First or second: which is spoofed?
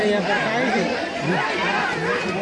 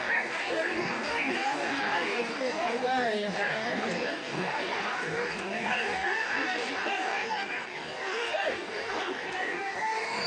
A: second